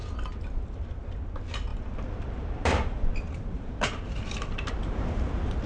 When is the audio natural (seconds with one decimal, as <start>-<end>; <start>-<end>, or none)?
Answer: 0.0-1.7; 4.7-5.7